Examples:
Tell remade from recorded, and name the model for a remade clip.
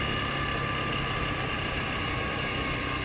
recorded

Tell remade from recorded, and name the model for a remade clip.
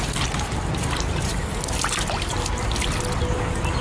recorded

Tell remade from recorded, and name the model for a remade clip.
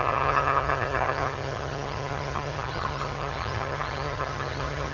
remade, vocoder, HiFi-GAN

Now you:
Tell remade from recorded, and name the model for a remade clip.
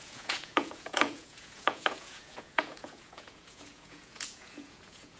remade, vocoder, Vocos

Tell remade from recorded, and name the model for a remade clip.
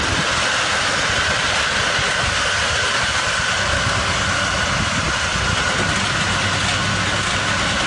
recorded